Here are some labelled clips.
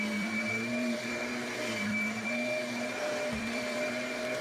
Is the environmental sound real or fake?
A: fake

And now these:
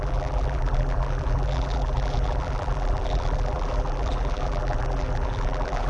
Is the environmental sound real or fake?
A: fake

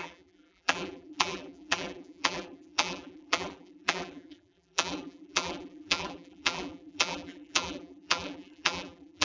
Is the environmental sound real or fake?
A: fake